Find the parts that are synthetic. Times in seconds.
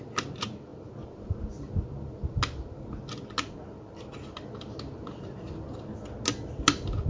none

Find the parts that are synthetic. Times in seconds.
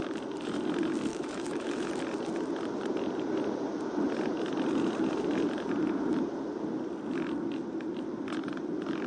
1.1-1.9 (autoencoder, DAC-VAE)